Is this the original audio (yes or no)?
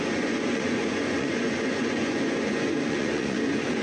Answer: no